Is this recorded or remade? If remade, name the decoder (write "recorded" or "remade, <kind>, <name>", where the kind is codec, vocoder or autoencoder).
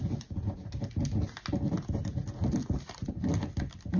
recorded